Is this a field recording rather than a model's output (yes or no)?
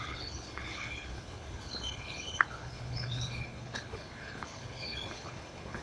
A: no